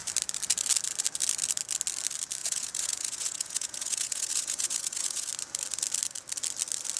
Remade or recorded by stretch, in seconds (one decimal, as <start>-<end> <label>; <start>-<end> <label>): 0.0-2.4 recorded; 2.4-5.3 remade; 5.3-7.0 recorded